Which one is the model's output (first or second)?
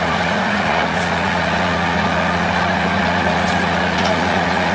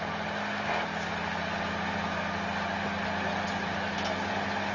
first